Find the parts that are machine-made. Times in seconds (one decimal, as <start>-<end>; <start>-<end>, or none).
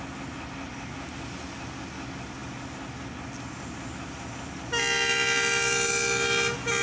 none